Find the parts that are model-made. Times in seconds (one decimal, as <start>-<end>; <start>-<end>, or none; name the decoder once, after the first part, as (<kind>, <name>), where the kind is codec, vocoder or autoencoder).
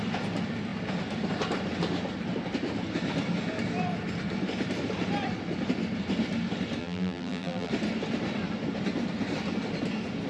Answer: 6.8-7.7 (vocoder, BigVGAN v2)